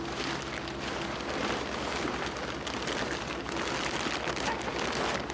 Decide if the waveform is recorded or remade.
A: recorded